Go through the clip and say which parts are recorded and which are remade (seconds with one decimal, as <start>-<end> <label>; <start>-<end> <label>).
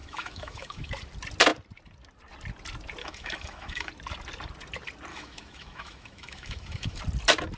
0.0-0.9 remade; 0.9-3.0 recorded; 3.0-3.9 remade; 3.9-5.1 recorded; 5.1-7.0 remade; 7.0-7.6 recorded